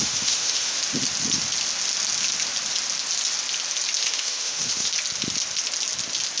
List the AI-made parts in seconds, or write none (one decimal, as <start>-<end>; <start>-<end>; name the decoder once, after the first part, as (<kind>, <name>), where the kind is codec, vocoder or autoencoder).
0.0-0.8 (autoencoder, DAC-VAE); 4.0-4.9